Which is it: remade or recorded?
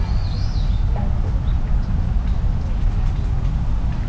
recorded